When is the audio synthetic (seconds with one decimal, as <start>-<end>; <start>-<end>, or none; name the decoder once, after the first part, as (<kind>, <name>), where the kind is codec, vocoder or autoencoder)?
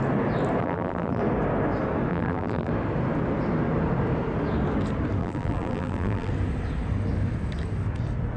0.6-1.2 (vocoder, BigVGAN v2); 2.1-2.7; 5.2-6.3